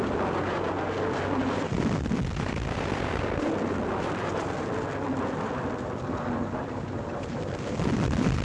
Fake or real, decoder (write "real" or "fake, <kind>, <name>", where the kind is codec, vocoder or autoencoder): fake, vocoder, BigVGAN v2